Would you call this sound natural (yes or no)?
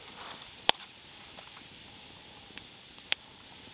yes